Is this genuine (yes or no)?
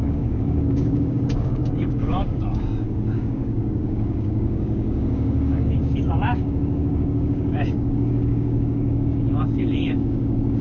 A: no